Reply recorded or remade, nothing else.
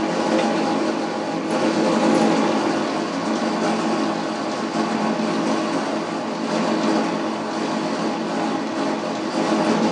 recorded